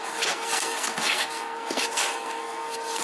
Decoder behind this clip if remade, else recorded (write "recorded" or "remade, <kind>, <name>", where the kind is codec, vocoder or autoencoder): remade, codec, SNAC